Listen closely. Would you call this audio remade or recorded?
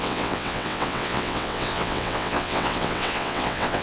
remade